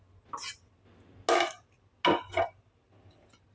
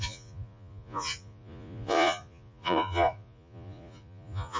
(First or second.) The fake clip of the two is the second